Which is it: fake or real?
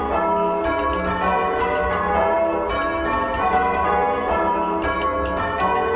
real